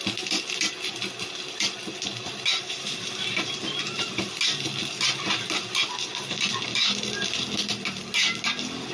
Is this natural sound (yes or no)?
yes